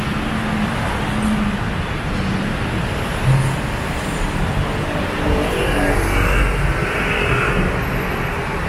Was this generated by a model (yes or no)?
no